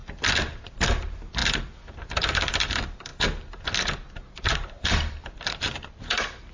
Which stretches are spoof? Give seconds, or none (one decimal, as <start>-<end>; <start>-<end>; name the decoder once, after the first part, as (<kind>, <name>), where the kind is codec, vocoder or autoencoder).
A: 0.7-3.1 (vocoder, BigVGAN v2); 4.2-6.5